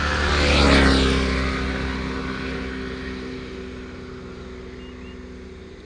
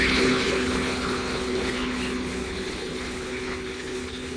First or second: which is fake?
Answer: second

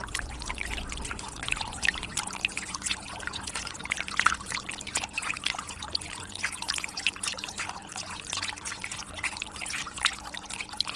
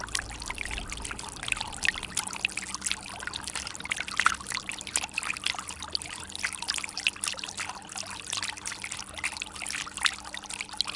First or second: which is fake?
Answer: first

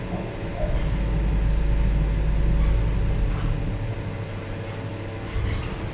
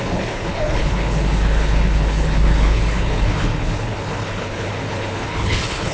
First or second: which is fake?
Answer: second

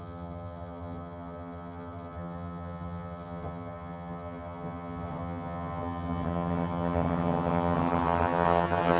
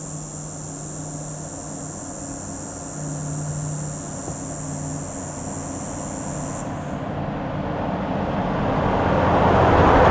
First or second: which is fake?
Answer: first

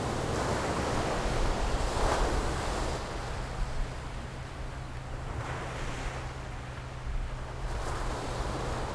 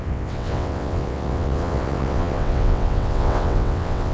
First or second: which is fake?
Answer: second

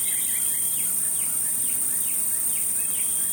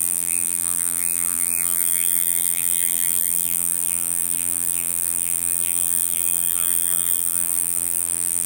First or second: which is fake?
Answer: second